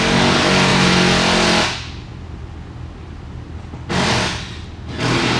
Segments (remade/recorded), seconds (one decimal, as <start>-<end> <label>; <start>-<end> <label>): 0.0-5.4 recorded